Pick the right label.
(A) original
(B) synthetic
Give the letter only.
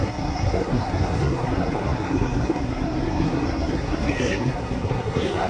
B